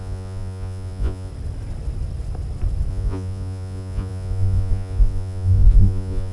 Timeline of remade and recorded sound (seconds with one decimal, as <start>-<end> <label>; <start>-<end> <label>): 0.0-1.3 remade; 1.3-2.9 recorded; 2.9-6.3 remade